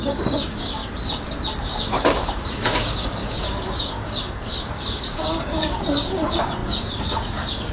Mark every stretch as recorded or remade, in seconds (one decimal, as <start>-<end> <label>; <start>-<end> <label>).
0.0-0.8 remade; 0.8-1.6 recorded; 1.6-7.7 remade